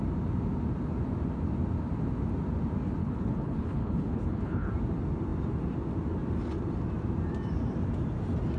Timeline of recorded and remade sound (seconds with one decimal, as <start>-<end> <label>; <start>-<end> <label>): 0.0-3.0 recorded; 3.0-4.7 remade; 4.7-8.6 recorded